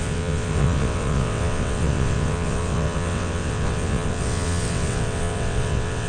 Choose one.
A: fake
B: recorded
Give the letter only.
A